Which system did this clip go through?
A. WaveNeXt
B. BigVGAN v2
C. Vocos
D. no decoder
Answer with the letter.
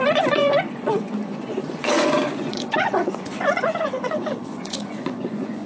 C